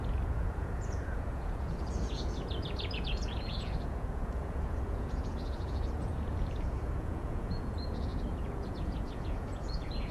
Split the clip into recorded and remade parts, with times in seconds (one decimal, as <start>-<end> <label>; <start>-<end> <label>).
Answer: 0.0-10.1 remade